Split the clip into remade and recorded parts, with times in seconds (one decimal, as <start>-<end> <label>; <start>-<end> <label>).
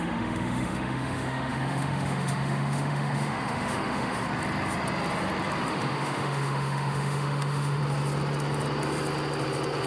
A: 0.0-4.2 remade; 4.2-5.7 recorded; 5.7-7.8 remade; 7.8-9.9 recorded